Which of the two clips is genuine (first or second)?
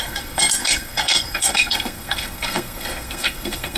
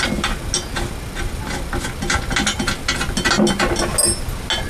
second